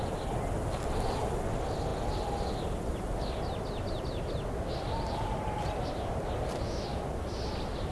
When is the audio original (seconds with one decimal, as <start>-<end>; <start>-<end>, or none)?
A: 0.0-7.9